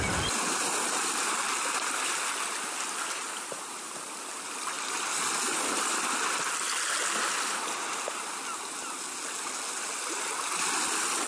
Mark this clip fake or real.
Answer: real